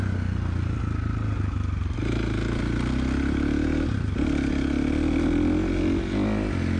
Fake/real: real